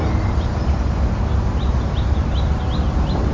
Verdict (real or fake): real